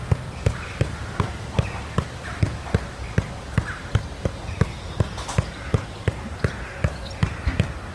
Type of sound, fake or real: real